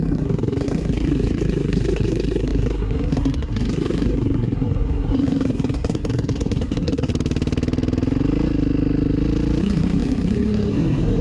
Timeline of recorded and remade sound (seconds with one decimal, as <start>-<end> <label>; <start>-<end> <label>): 0.0-7.1 remade; 7.1-9.6 recorded; 9.6-11.2 remade